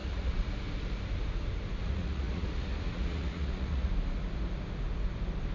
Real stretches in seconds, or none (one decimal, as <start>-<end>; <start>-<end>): 0.5-1.8; 3.9-5.5